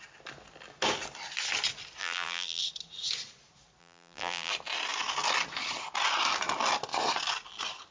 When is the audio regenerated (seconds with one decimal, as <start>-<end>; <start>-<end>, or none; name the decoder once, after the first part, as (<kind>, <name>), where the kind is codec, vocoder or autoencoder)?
2.0-2.6 (vocoder, BigVGAN v2); 3.8-4.5